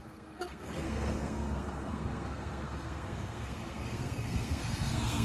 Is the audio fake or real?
fake